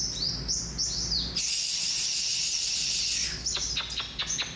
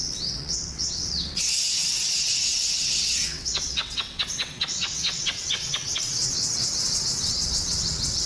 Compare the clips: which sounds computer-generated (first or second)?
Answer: second